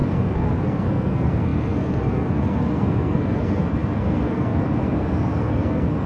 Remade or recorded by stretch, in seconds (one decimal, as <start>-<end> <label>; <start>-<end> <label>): 0.0-6.1 remade